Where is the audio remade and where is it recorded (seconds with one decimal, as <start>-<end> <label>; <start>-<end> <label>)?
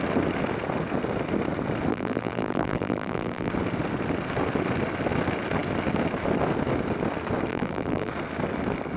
0.0-1.9 recorded; 1.9-3.5 remade; 3.5-7.5 recorded; 7.5-8.1 remade; 8.1-9.0 recorded